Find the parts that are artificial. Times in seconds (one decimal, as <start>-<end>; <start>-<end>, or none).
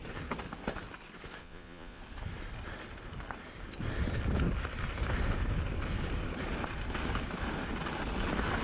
1.4-2.0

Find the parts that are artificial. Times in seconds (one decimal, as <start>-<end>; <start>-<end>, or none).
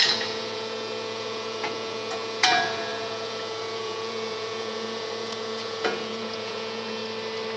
0.0-7.0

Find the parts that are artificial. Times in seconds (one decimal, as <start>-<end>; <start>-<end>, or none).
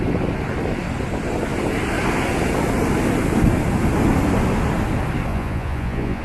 5.3-6.2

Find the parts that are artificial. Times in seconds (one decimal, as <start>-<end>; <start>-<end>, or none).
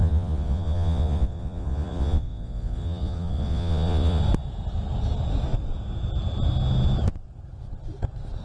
0.0-4.2